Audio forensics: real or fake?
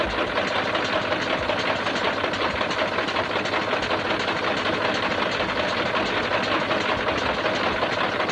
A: real